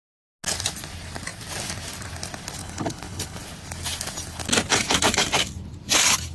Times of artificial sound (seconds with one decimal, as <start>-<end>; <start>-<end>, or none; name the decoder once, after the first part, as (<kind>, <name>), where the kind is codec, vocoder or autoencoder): 2.6-3.4 (codec, HILCodec)